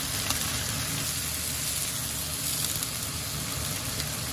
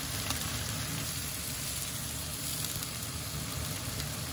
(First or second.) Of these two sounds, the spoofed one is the second